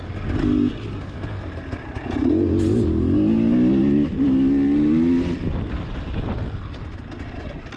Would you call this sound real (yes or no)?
yes